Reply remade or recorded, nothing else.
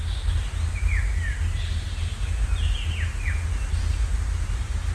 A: recorded